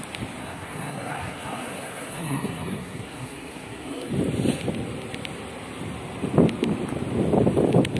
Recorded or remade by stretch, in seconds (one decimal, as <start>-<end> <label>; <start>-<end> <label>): 0.0-0.4 recorded; 0.4-4.1 remade; 4.1-8.0 recorded